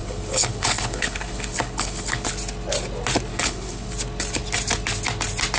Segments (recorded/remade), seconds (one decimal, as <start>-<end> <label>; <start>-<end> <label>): 0.0-2.3 remade; 2.3-3.3 recorded; 3.3-3.9 remade; 3.9-5.6 recorded